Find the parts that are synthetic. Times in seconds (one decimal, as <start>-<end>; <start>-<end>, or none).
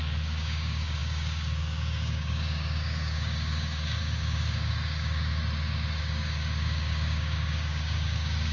0.0-5.4; 6.0-8.5